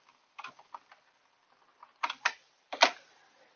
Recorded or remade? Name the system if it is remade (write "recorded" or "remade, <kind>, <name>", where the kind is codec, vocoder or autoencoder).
recorded